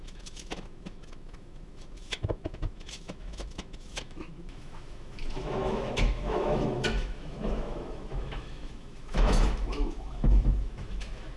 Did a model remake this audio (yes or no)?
yes